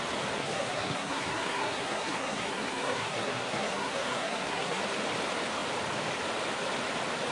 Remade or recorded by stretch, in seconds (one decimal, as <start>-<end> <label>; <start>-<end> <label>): 0.0-0.4 recorded; 0.4-4.8 remade; 4.8-7.3 recorded